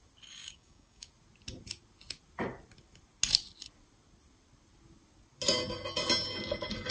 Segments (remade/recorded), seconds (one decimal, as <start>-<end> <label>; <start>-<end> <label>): 0.0-0.4 recorded; 0.4-1.1 remade; 1.1-6.9 recorded